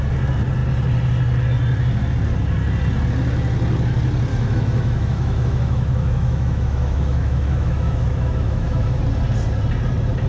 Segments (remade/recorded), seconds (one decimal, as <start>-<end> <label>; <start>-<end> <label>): 0.0-4.3 recorded; 4.3-9.0 remade; 9.0-10.3 recorded